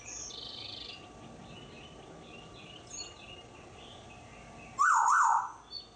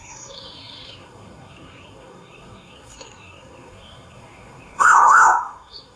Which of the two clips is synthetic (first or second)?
second